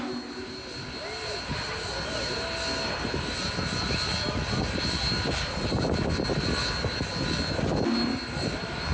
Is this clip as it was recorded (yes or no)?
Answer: yes